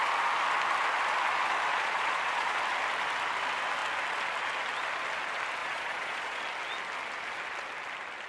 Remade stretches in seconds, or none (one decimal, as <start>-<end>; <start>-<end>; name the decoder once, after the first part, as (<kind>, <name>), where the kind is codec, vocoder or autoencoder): 1.7-2.6 (vocoder, Vocos); 5.6-6.4